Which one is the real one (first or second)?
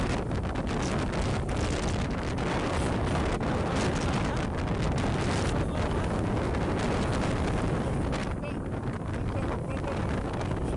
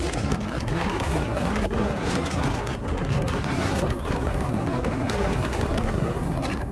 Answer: first